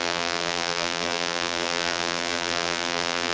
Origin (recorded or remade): remade